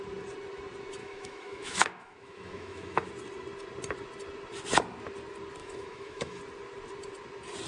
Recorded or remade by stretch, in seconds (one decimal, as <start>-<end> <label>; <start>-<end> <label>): 0.0-1.0 recorded; 1.0-3.1 remade; 3.1-5.6 recorded; 5.6-6.4 remade; 6.4-7.7 recorded